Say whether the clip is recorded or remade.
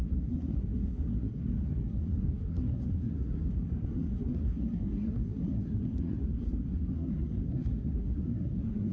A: remade